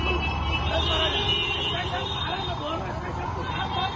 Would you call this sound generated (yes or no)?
no